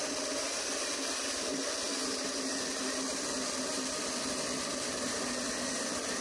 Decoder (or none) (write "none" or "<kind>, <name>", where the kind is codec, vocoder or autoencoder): none